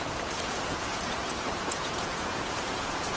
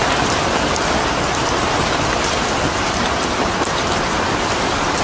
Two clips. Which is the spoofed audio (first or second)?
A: first